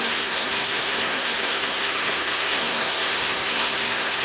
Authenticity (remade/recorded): remade